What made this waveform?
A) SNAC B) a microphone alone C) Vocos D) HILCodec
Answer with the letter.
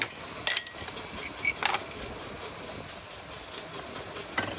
B